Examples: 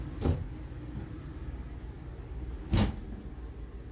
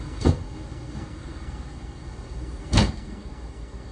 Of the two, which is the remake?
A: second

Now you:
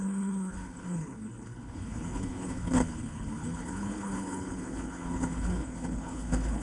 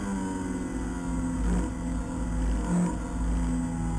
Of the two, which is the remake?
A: first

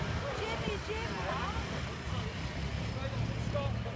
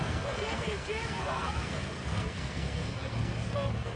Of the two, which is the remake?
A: second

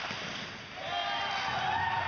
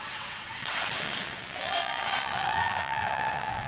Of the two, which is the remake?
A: second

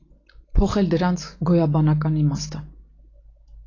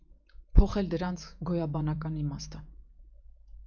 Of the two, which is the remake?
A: second